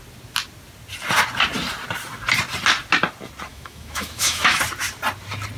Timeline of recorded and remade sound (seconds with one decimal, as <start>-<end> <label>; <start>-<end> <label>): 0.0-3.5 recorded; 3.5-4.6 remade; 4.6-5.6 recorded